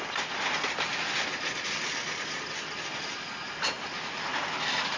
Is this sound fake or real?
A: real